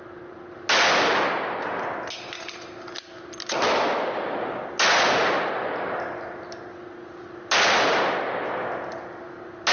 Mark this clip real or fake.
real